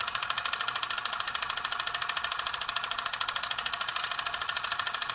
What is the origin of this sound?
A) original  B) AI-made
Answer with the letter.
A